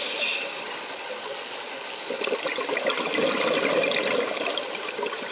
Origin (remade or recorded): recorded